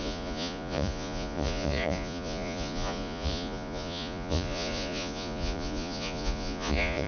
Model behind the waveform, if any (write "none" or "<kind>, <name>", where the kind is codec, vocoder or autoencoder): vocoder, Vocos